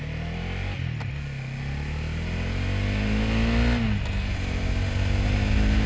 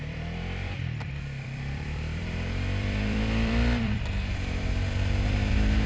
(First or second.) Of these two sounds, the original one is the first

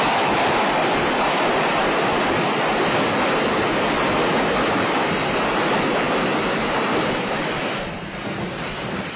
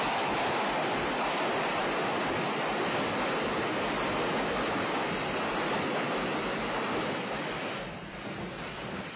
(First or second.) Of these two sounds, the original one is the second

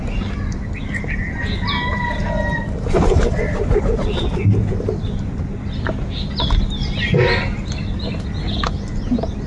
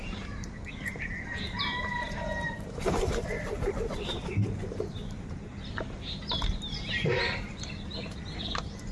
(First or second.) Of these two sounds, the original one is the first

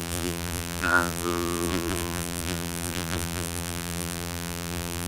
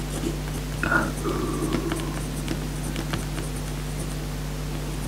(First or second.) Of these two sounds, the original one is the second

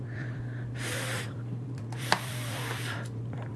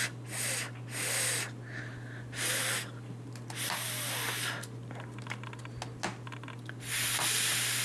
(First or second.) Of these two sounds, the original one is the second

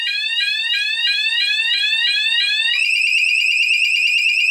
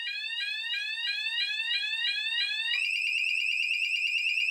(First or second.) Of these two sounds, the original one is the second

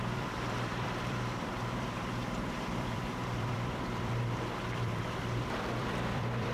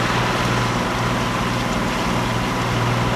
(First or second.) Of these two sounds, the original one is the second